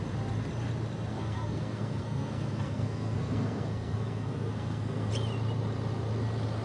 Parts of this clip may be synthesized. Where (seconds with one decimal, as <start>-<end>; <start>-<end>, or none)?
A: 1.1-5.1